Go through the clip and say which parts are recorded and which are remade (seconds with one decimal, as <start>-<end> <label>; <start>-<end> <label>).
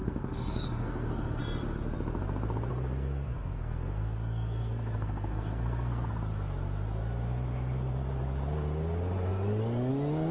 0.0-1.4 remade; 1.4-2.7 recorded; 2.7-6.1 remade; 6.1-10.3 recorded